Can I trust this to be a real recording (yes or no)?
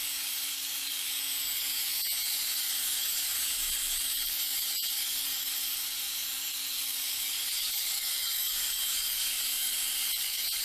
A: no